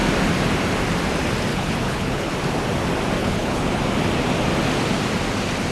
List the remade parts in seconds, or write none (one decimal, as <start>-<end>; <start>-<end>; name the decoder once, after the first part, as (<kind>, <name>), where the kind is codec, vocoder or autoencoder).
1.5-2.3 (codec, HILCodec); 3.2-3.8